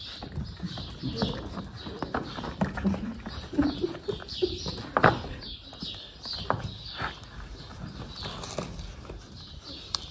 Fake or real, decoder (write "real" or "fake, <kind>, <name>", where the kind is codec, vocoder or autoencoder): real